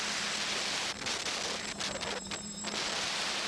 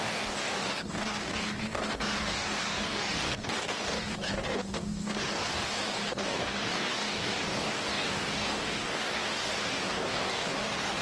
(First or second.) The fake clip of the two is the second